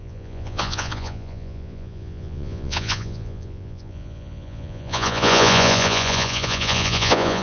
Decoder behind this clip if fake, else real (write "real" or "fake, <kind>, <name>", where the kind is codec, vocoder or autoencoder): fake, vocoder, Vocos